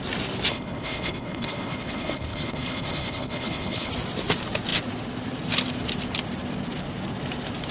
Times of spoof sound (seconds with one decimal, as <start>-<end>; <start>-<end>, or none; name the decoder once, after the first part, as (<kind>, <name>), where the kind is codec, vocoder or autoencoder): 0.5-3.9 (codec, HILCodec)